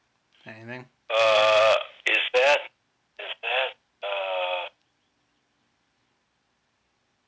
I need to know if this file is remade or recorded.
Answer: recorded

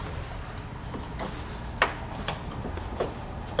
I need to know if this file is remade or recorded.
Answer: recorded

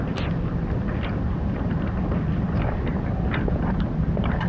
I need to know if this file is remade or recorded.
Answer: recorded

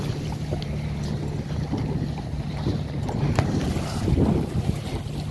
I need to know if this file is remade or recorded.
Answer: recorded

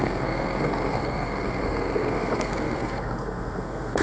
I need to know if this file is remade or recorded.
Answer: remade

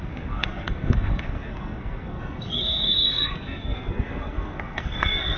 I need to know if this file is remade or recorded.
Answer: remade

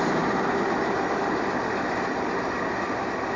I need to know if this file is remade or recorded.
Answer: recorded